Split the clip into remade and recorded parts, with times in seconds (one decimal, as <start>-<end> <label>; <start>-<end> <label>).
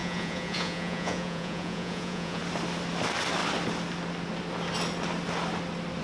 0.0-2.4 remade; 2.4-6.0 recorded